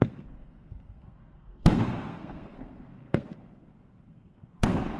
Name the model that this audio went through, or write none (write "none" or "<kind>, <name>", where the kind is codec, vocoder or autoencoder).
codec, SNAC